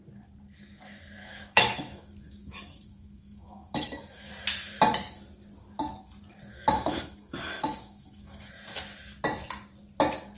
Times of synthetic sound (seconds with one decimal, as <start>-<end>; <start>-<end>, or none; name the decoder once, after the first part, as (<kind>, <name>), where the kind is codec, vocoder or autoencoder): 1.2-4.3 (autoencoder, DAC-VAE); 6.5-8.5